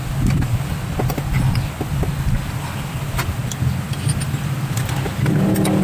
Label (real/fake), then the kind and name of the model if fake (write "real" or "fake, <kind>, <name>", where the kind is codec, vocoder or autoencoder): real